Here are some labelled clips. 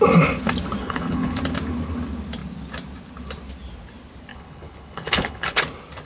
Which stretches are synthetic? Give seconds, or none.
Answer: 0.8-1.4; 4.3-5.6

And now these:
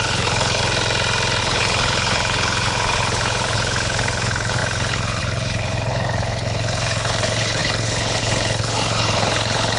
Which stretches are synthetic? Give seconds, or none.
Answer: 0.0-0.6; 1.4-9.8

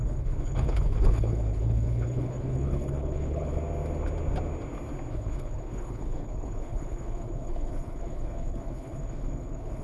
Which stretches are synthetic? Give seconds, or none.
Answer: 0.0-3.6; 5.1-9.8

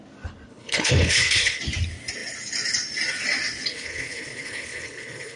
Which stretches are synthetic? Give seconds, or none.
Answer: 0.5-1.6; 3.7-5.4

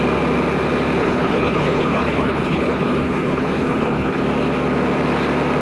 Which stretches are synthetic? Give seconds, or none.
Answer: 1.0-4.2

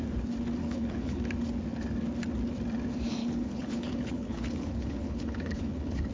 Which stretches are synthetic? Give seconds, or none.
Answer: 0.6-1.2; 3.2-6.1

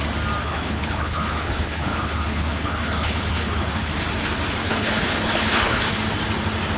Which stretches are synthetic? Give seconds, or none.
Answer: 0.4-3.9; 4.6-6.0

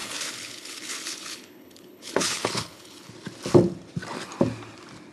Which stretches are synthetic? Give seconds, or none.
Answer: 0.0-3.1